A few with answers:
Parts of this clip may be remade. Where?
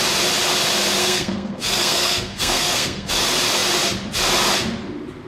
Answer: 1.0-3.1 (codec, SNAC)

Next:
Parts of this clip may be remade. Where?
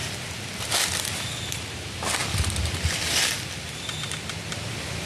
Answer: none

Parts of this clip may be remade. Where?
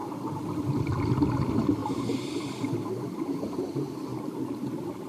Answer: 0.0-0.6 (vocoder, BigVGAN v2); 4.1-5.1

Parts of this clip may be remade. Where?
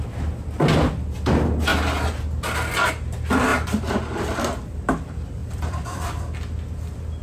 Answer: 3.5-4.0 (vocoder, BigVGAN v2); 5.4-6.2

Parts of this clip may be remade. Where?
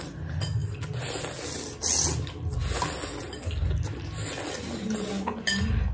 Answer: none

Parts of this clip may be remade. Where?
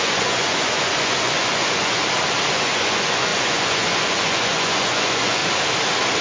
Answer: 0.0-2.0 (vocoder, Vocos); 2.5-5.4